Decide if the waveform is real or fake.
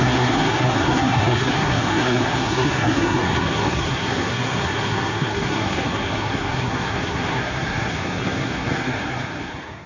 fake